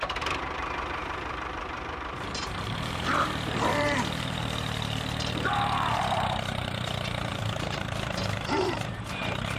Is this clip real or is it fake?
fake